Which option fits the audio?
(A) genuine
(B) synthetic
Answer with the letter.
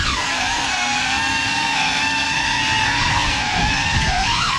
B